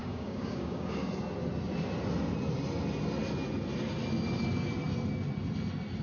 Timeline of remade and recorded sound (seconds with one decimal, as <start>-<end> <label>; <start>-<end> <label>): 0.0-1.1 remade; 1.1-6.0 recorded